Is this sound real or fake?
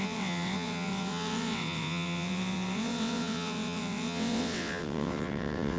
fake